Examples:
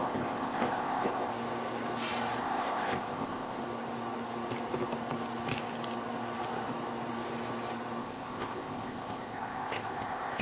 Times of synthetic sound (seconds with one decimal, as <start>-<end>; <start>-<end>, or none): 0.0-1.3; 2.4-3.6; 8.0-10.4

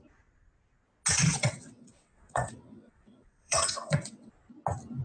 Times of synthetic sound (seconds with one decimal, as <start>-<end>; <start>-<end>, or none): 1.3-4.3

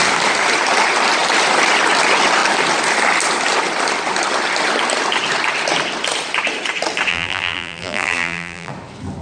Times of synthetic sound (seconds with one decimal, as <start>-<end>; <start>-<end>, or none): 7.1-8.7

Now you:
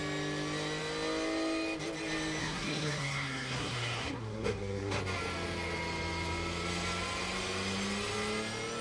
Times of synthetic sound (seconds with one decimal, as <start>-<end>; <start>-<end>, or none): 2.4-5.0

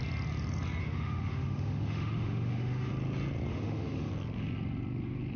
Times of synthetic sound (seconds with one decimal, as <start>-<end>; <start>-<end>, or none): 0.8-2.9; 3.5-4.1